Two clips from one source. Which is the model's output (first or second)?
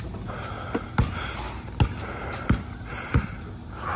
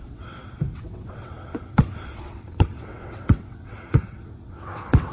second